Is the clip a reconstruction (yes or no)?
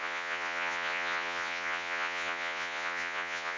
yes